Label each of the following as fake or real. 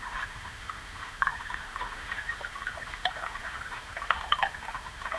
fake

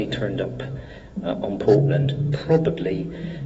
fake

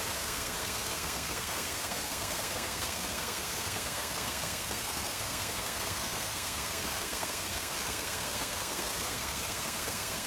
fake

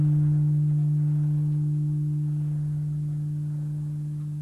real